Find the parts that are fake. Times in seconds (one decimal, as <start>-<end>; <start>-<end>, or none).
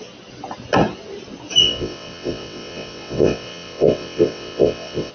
1.6-5.1